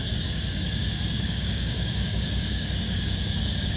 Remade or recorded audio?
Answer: remade